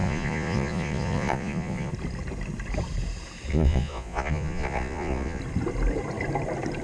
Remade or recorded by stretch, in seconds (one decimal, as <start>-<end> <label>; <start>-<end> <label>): 0.0-1.9 remade; 1.9-3.5 recorded; 3.5-5.4 remade; 5.4-6.8 recorded